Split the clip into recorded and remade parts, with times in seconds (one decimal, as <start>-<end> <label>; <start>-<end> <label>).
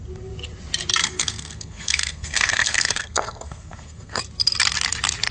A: 0.0-1.0 recorded; 1.0-4.2 remade; 4.2-5.3 recorded